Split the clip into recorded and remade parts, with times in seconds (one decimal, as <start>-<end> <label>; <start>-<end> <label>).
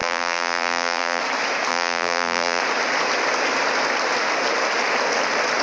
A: 0.0-1.2 remade; 1.2-1.7 recorded; 1.7-2.6 remade; 2.6-5.6 recorded